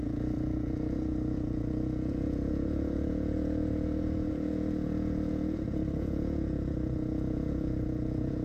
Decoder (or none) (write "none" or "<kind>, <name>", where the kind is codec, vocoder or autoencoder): vocoder, Vocos